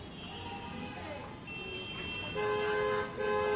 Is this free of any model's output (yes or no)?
yes